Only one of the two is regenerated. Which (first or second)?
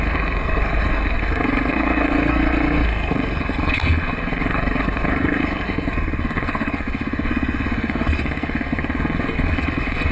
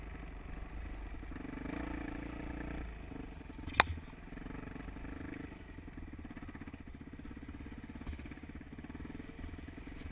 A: first